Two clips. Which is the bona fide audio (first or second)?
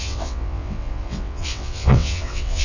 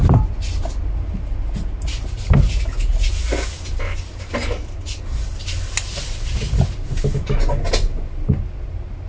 second